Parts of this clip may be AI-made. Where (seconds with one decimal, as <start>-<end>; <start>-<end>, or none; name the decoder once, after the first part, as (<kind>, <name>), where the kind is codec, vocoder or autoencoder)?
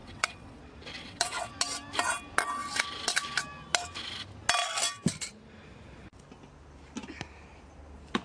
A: 0.0-0.6 (vocoder, WaveNeXt); 1.0-1.5